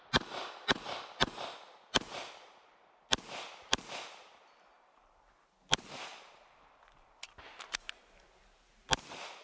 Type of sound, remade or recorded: recorded